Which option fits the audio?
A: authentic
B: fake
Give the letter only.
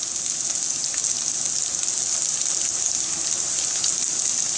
A